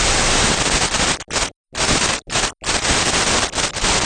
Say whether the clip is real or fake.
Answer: real